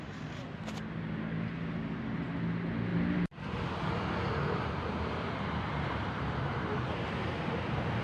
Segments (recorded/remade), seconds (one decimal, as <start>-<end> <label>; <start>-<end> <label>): 0.0-2.9 recorded; 2.9-7.5 remade; 7.5-8.0 recorded